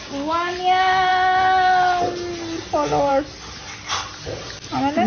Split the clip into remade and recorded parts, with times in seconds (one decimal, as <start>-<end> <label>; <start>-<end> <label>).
0.0-5.1 recorded